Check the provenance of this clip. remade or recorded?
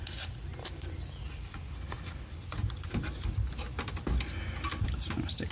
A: recorded